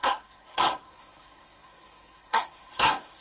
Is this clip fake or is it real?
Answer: fake